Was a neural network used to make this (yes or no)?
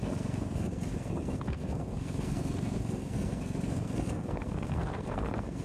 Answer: yes